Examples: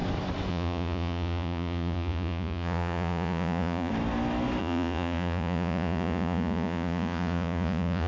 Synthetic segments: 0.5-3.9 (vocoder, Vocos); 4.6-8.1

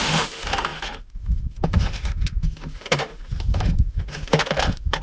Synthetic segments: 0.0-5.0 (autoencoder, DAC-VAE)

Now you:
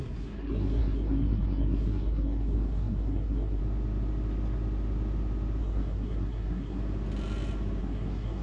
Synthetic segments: 0.0-3.6 (codec, SNAC); 5.6-6.8; 7.8-8.4

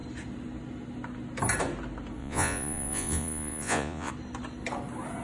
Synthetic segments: 2.2-4.1 (vocoder, Vocos)

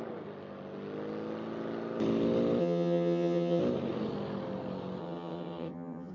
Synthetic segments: 2.6-3.6 (vocoder, HiFi-GAN); 5.0-6.1

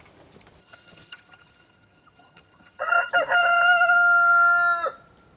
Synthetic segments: 0.6-3.1 (vocoder, HiFi-GAN)

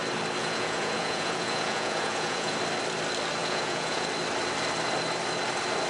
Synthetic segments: 0.4-2.6 (vocoder, Vocos); 3.4-4.1